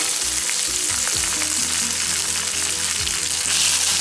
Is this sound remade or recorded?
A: recorded